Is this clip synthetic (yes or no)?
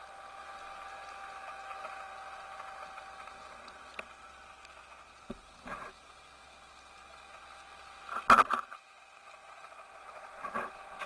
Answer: no